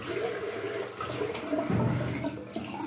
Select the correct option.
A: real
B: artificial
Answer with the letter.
A